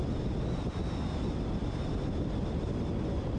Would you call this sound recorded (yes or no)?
yes